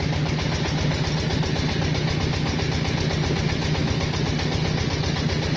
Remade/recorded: recorded